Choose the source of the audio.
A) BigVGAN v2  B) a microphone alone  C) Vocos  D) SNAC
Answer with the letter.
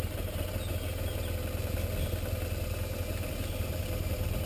B